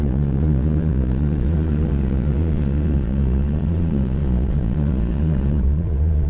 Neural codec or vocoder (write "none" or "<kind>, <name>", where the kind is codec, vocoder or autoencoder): vocoder, Vocos